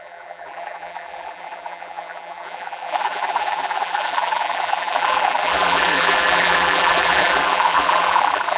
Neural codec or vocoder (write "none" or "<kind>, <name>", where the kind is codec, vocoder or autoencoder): vocoder, BigVGAN v2